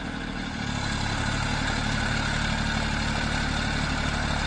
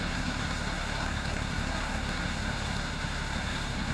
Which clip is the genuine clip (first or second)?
first